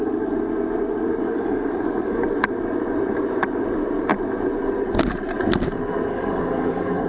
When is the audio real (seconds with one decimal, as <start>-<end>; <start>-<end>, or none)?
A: 0.0-1.1; 2.2-6.1